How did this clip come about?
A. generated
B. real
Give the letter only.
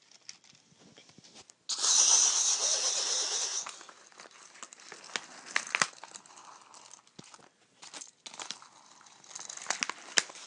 B